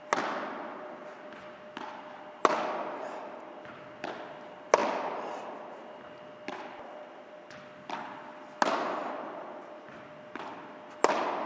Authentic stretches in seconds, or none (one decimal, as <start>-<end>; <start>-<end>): 0.0-11.5